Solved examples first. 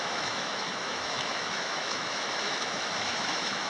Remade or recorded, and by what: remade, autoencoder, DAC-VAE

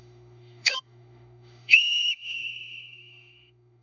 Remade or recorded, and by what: remade, autoencoder, DAC-VAE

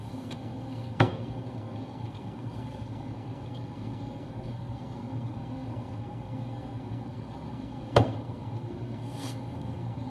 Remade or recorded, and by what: remade, codec, SNAC